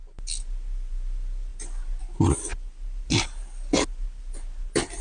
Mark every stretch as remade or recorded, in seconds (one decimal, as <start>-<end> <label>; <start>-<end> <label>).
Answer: 0.0-5.0 recorded